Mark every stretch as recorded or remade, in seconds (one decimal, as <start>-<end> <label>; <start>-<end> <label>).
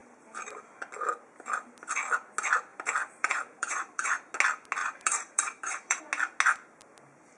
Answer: 0.0-2.7 recorded; 2.7-4.1 remade; 4.1-4.8 recorded; 4.8-6.0 remade; 6.0-7.4 recorded